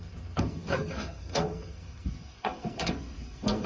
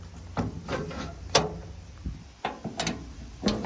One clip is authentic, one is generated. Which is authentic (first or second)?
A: second